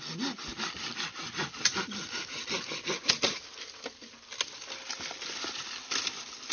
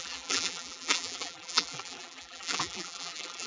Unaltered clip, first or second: first